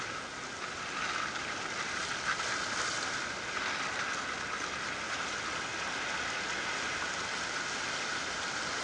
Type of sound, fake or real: real